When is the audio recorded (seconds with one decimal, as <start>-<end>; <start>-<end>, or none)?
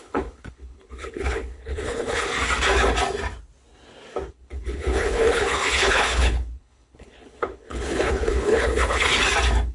2.3-4.3; 9.1-9.7